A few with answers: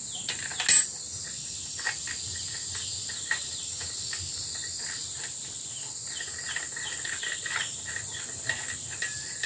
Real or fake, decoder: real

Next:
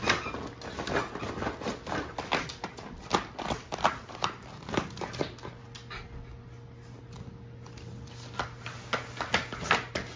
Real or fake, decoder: real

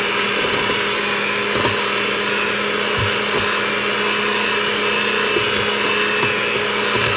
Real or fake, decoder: real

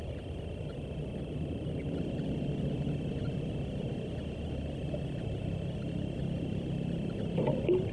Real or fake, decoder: real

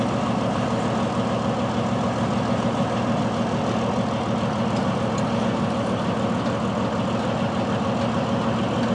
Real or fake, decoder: real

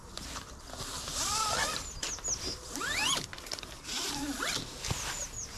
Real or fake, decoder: real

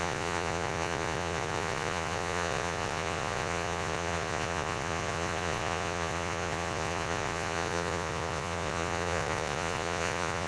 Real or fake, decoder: fake, vocoder, Vocos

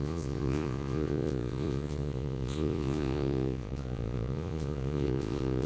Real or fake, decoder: fake, vocoder, Vocos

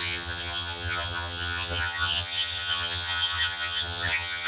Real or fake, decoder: fake, vocoder, HiFi-GAN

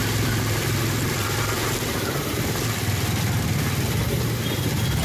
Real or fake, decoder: fake, vocoder, BigVGAN v2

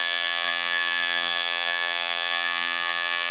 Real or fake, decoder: fake, vocoder, BigVGAN v2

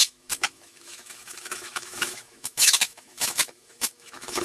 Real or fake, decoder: fake, autoencoder, DAC-VAE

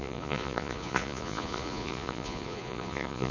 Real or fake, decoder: fake, vocoder, Vocos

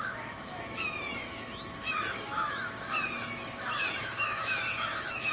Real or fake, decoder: fake, autoencoder, DAC-VAE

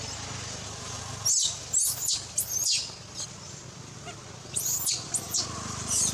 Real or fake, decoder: real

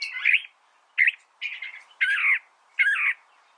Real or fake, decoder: real